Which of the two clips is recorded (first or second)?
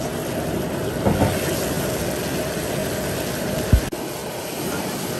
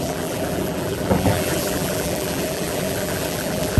first